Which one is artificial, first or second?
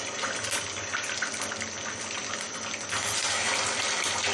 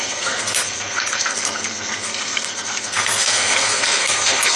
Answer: second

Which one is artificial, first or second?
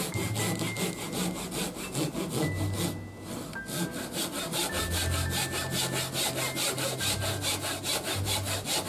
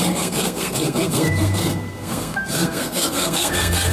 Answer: second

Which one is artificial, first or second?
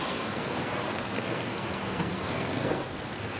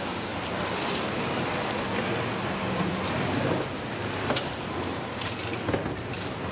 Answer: first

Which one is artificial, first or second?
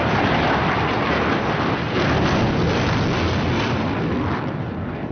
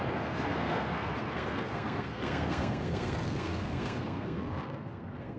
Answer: second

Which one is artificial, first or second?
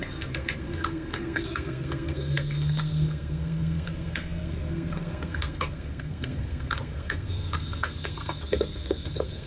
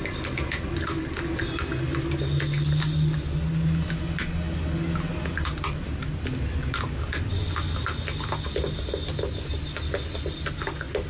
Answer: first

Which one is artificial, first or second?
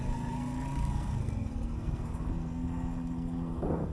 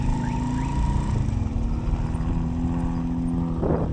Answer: first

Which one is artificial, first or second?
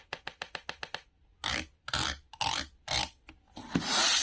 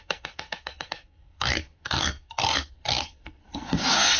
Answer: second